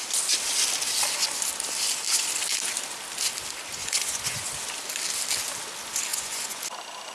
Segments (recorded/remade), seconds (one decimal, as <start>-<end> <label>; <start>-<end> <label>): 0.0-3.8 recorded; 3.8-4.5 remade; 4.5-6.1 recorded; 6.1-6.6 remade; 6.6-7.1 recorded